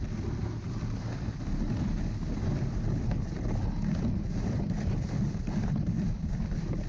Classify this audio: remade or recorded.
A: recorded